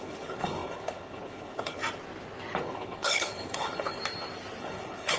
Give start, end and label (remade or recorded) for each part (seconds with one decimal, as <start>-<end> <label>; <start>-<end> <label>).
0.0-1.8 remade; 1.8-2.6 recorded; 2.6-4.0 remade; 4.0-4.6 recorded; 4.6-5.2 remade